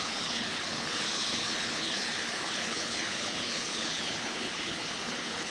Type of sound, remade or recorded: remade